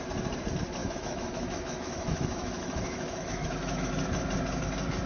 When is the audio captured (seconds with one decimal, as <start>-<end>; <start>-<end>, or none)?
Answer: 0.0-0.8; 3.9-5.1